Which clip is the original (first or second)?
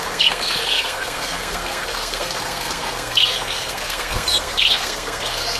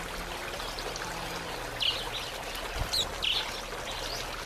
second